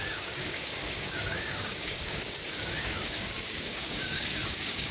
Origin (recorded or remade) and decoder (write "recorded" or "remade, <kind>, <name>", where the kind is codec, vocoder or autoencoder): remade, codec, DAC